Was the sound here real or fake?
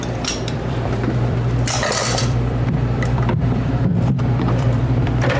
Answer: fake